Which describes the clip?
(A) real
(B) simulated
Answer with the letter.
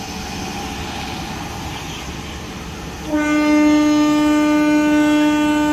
A